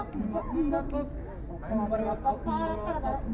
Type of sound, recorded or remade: recorded